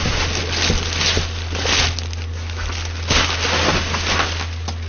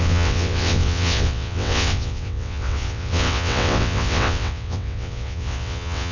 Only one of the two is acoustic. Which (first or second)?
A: first